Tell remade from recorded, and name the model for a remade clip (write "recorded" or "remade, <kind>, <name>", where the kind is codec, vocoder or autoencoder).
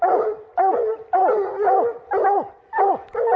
recorded